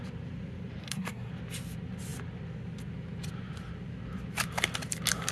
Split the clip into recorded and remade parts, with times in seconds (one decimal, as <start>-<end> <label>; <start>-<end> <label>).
0.0-0.8 recorded; 0.8-1.3 remade; 1.3-5.3 recorded